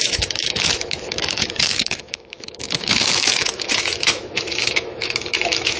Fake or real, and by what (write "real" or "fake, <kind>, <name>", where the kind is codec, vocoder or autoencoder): fake, autoencoder, DAC-VAE